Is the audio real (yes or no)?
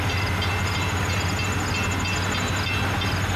yes